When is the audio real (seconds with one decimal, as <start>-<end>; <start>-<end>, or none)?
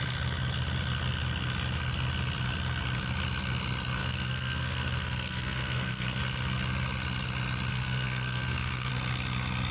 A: 0.0-4.0; 6.2-7.7; 8.9-9.7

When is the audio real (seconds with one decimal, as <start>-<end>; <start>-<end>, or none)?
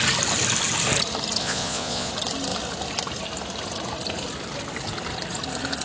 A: 0.0-1.4; 2.1-5.8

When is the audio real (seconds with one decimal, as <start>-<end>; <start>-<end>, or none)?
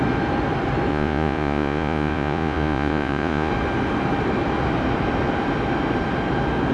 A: 0.0-0.9; 3.5-6.7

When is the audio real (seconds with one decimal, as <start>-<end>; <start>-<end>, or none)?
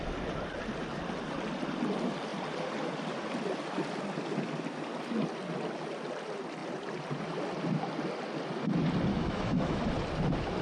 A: 0.0-9.1; 9.8-10.6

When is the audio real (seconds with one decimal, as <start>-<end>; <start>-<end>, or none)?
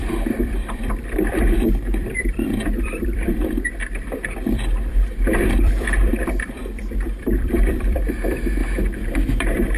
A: 8.6-9.4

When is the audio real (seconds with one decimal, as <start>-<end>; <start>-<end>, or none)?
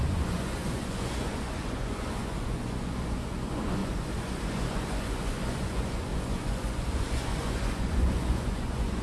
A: none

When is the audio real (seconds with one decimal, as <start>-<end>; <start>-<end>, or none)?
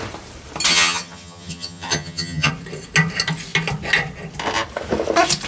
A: 0.0-0.7; 2.5-5.5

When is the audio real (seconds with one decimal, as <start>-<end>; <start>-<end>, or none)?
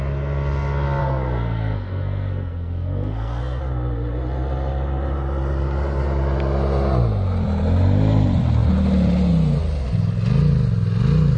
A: 0.0-1.0; 3.6-11.4